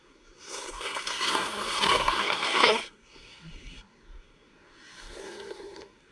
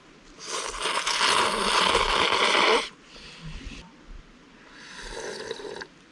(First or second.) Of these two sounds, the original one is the second